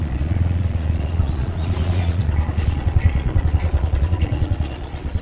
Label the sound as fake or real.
fake